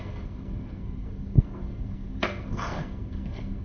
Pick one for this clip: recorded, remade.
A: remade